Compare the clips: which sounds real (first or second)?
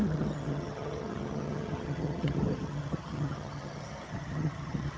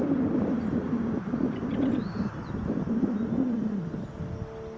second